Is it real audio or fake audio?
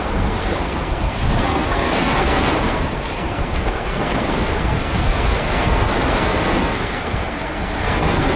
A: fake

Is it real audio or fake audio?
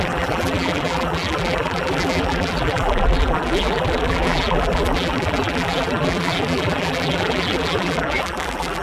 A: fake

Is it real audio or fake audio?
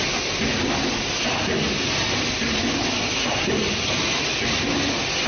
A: real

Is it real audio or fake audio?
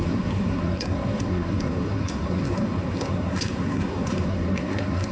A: fake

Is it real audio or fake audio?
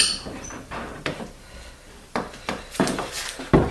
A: fake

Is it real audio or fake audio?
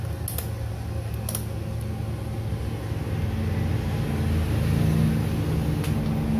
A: real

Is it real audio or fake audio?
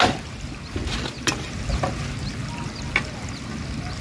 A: real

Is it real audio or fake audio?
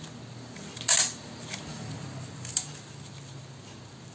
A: real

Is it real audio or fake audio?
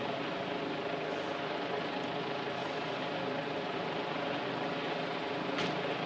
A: real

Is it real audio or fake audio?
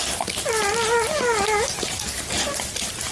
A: real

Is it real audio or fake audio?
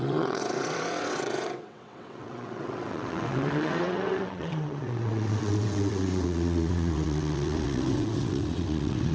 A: fake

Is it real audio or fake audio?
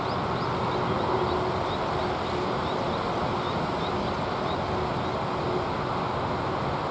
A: real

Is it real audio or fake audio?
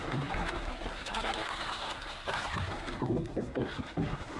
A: fake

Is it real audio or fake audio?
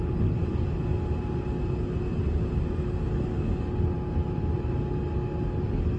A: real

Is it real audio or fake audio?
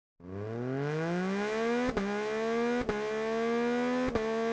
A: real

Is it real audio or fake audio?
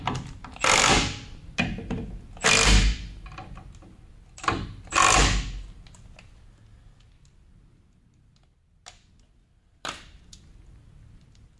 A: real